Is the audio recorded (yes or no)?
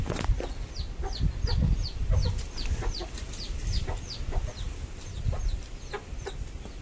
yes